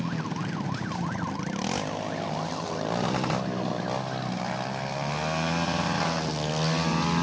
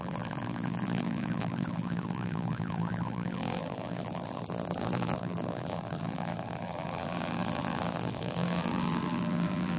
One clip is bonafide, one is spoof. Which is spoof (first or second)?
second